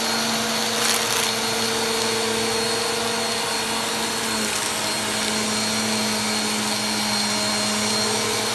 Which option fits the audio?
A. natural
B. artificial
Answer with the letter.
A